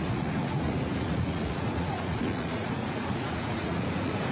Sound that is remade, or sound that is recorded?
remade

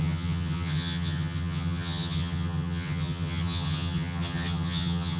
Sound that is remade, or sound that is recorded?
remade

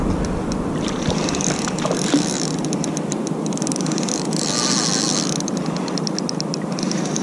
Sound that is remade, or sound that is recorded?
recorded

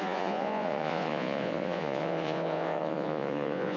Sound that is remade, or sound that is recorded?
remade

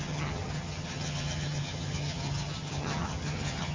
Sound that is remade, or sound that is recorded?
remade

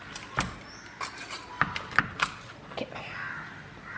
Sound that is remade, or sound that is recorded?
recorded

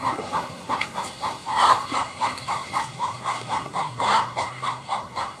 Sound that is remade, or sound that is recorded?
remade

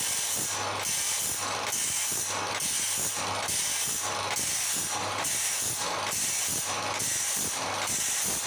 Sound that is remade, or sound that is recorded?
recorded